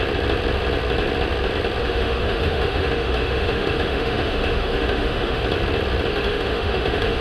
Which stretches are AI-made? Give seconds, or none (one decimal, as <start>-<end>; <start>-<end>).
1.8-5.4; 6.1-7.2